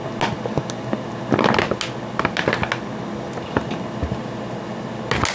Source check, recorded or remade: recorded